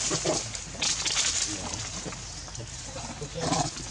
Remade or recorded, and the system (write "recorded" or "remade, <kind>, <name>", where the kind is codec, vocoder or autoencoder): recorded